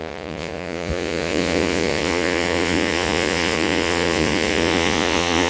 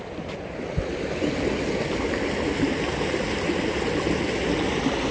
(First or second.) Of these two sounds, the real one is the second